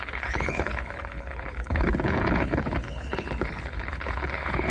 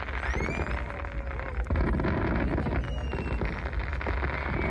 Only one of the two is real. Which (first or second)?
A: second